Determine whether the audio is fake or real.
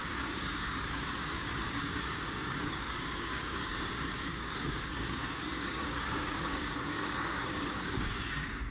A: fake